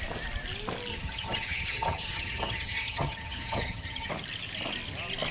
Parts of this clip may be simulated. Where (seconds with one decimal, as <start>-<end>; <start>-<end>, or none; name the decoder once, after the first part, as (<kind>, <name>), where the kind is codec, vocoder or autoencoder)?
0.9-4.1 (vocoder, HiFi-GAN)